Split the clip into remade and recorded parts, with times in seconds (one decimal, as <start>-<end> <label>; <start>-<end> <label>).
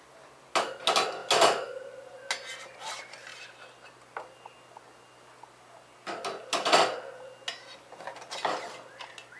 0.0-9.4 recorded